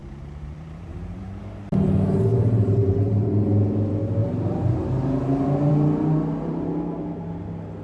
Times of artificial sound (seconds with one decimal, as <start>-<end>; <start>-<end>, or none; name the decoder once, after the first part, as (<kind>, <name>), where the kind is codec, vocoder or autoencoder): 0.0-1.4 (vocoder, BigVGAN v2); 2.3-2.9; 4.2-5.7